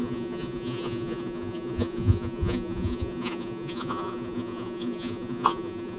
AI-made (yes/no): yes